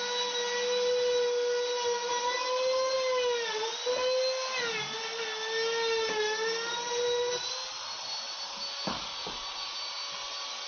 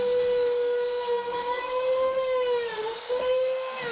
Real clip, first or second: first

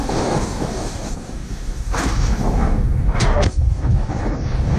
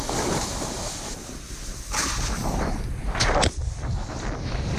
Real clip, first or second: second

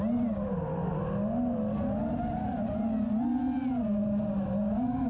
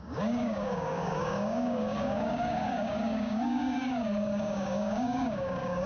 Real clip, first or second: first